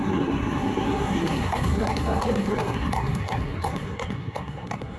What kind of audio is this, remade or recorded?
remade